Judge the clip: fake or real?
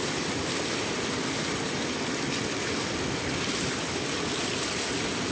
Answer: real